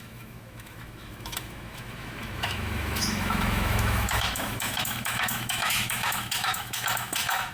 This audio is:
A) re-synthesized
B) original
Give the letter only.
A